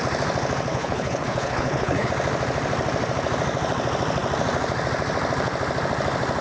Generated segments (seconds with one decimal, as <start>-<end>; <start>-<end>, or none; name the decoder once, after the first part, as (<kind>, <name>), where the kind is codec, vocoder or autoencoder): 0.7-2.1 (codec, HILCodec)